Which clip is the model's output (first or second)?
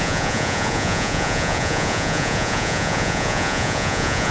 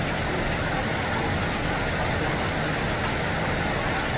first